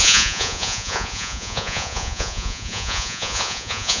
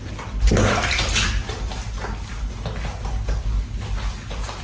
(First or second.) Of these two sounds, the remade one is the first